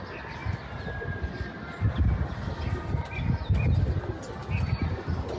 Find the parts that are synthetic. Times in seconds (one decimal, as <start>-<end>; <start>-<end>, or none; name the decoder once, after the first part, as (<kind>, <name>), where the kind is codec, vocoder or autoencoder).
none